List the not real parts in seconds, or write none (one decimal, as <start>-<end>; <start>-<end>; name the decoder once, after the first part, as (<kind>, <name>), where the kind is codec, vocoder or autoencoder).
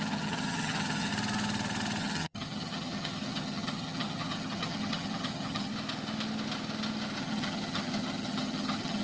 0.0-1.1 (vocoder, HiFi-GAN); 2.0-5.7; 7.2-9.0